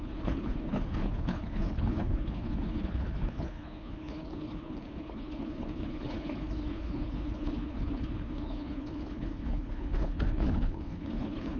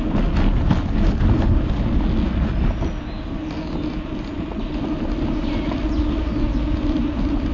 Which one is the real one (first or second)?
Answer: second